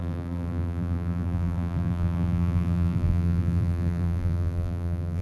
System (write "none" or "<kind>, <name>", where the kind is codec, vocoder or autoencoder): vocoder, BigVGAN v2